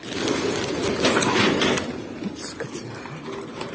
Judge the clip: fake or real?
real